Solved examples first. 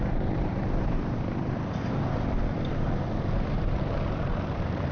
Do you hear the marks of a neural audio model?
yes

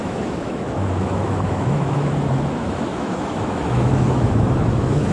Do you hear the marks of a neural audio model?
yes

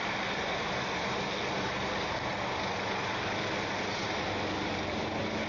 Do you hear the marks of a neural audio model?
no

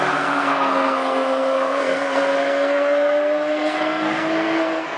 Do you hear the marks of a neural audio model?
yes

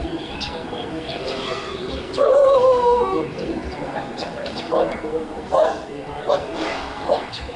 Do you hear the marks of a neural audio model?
yes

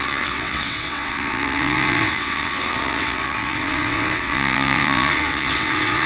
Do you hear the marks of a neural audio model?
yes